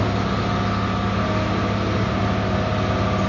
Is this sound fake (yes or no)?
no